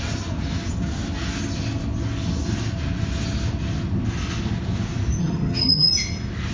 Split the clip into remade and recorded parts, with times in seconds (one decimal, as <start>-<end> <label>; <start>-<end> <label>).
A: 0.0-5.2 recorded; 5.2-5.9 remade; 5.9-6.5 recorded